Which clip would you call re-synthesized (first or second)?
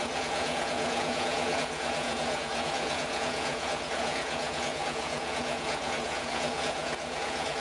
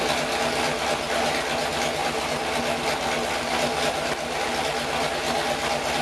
first